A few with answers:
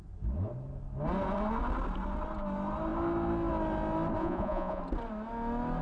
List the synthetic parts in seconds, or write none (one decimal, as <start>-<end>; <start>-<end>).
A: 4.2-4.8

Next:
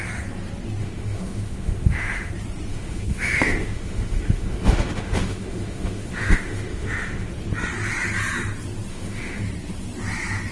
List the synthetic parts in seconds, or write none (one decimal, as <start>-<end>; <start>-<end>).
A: 0.8-2.3; 2.7-7.3; 8.9-9.4

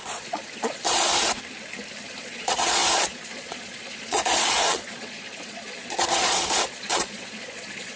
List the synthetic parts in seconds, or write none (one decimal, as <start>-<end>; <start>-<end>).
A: 0.0-1.1; 2.2-8.0